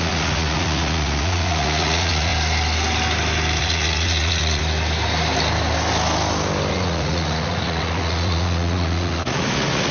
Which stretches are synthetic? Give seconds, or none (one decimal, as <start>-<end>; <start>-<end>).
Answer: 0.0-2.3; 3.6-4.6; 6.7-9.9